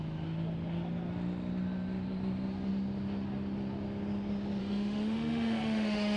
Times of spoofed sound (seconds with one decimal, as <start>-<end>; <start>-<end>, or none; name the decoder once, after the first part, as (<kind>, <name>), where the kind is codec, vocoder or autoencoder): 4.6-6.2 (autoencoder, DAC-VAE)